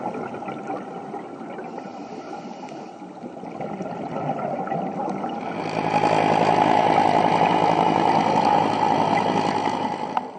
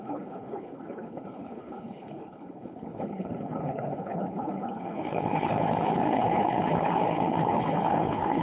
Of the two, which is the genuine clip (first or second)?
first